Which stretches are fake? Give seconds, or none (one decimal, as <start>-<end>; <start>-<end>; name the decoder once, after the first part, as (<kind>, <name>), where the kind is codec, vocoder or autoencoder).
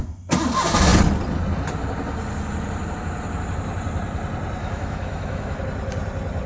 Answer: 4.6-5.6 (autoencoder, DAC-VAE)